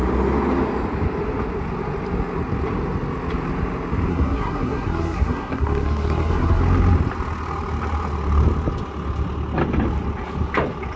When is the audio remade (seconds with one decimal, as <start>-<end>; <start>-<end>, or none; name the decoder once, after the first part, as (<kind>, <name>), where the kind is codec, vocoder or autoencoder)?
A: 4.1-6.6 (codec, SNAC)

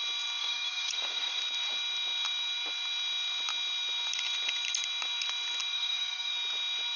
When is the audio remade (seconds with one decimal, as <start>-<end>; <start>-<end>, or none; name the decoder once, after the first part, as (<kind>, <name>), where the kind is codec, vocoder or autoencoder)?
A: 0.4-1.4 (codec, DAC); 5.7-6.3

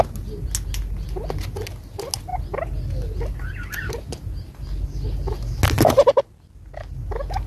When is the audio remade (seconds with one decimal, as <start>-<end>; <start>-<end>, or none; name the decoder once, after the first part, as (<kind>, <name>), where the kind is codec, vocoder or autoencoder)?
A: none

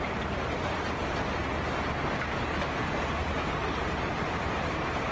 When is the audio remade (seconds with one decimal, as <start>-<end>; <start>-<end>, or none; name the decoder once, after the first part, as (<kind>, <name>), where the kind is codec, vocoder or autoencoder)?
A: 0.0-1.0 (vocoder, BigVGAN v2); 3.6-5.1

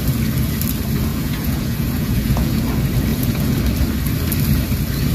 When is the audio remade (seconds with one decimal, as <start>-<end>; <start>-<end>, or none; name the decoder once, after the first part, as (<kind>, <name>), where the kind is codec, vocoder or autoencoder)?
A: 1.1-2.6 (vocoder, Vocos); 3.1-3.6

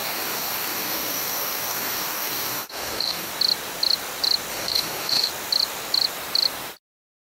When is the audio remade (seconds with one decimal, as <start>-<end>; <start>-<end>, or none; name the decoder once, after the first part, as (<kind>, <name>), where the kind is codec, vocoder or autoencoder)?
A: 0.0-3.3 (codec, DAC); 4.5-5.3